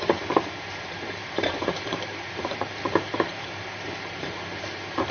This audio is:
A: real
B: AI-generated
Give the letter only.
B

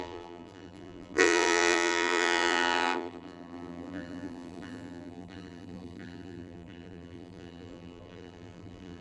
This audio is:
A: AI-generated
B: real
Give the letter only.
A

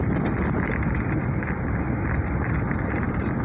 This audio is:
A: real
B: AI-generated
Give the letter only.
A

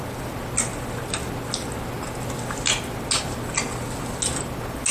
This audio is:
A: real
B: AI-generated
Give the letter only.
A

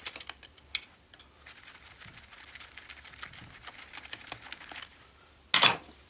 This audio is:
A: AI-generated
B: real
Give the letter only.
B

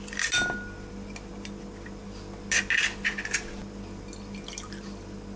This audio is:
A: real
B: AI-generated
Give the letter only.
A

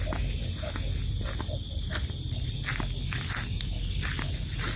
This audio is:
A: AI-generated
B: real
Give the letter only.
B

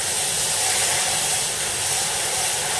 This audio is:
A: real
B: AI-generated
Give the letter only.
A